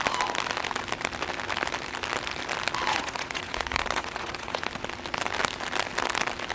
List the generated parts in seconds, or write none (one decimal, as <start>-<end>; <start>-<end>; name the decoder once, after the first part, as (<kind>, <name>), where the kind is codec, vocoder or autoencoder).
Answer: 2.9-4.7 (vocoder, Vocos)